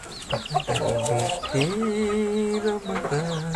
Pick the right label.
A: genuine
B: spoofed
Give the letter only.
A